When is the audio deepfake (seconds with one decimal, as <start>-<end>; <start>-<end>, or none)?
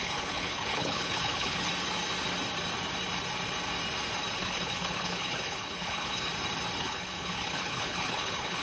0.0-1.7; 4.4-6.3; 6.8-8.6